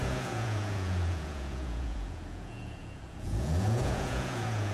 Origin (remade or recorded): remade